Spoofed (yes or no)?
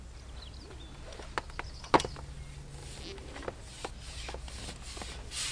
no